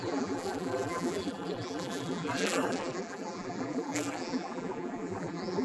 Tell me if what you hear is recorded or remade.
remade